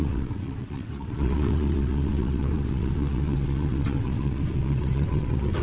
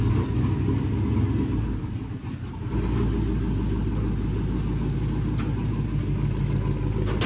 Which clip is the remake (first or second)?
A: first